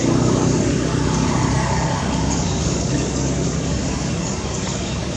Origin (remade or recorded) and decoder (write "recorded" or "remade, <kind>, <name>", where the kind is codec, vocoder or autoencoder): remade, codec, DAC